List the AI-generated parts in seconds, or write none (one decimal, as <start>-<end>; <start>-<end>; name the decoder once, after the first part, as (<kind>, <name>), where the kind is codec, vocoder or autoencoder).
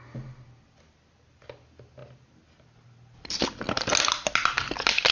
none